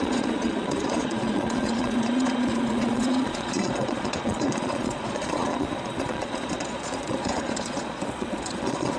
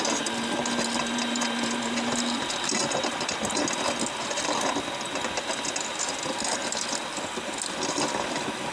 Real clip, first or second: second